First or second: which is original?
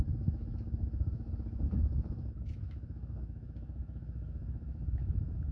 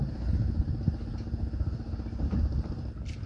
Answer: second